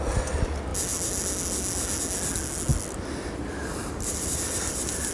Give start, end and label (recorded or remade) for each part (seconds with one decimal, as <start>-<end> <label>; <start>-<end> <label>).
0.0-2.7 recorded; 2.7-5.1 remade